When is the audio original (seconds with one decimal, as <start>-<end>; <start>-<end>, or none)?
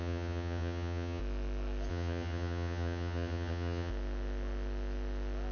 1.2-1.9; 3.9-5.5